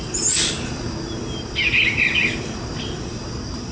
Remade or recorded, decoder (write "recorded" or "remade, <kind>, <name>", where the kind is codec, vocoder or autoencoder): recorded